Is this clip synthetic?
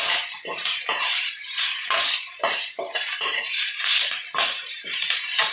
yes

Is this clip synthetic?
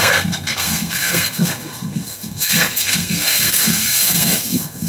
yes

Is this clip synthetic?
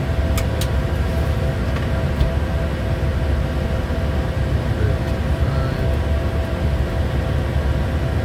no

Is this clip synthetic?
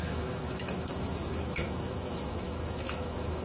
yes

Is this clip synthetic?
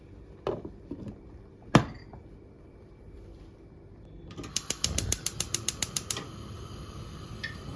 yes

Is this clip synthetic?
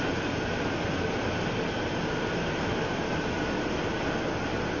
no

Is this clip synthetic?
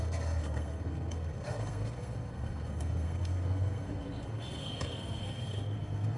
yes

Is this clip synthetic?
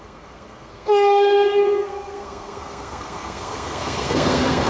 yes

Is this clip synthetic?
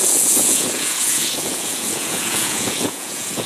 yes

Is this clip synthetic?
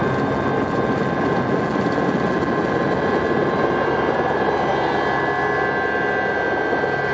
no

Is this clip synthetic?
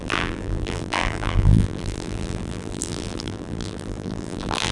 yes